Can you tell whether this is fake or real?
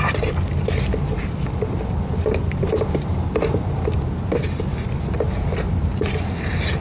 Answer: real